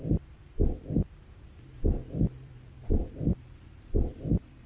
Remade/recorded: remade